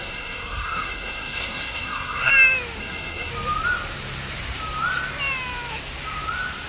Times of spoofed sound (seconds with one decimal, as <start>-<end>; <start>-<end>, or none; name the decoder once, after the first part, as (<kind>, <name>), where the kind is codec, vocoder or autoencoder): 0.0-2.3 (codec, SNAC); 2.8-3.3

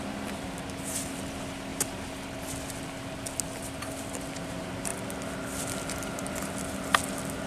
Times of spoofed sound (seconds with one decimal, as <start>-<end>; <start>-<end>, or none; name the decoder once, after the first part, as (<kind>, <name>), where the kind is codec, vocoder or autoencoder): none

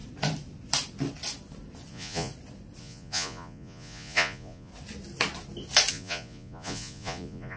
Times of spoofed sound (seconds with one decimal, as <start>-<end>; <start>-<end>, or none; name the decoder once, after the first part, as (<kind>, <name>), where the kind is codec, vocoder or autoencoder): 1.9-2.3 (vocoder, Vocos); 2.8-4.7; 5.9-7.6

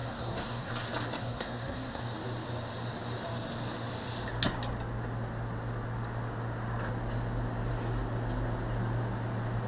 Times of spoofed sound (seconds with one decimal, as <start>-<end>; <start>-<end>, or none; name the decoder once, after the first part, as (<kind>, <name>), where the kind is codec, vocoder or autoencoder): 0.0-0.7 (codec, SNAC); 1.2-2.0

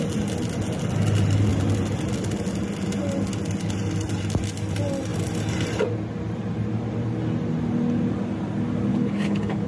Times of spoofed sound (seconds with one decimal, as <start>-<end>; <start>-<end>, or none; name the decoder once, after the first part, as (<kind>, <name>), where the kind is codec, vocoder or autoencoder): 8.9-9.7 (codec, HILCodec)

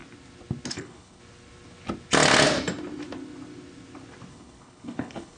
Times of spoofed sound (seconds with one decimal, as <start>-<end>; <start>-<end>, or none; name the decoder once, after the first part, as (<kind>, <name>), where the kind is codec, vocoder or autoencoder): 0.7-1.2 (codec, HILCodec); 4.3-5.4

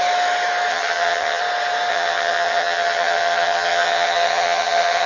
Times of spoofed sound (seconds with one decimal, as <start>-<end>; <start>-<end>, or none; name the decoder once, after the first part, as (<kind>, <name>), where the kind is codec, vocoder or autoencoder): 0.7-1.4 (vocoder, HiFi-GAN); 1.9-5.1

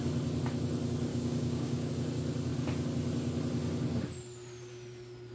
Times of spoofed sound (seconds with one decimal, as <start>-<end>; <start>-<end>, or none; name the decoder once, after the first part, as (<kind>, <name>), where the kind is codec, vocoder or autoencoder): 1.1-1.9 (codec, DAC)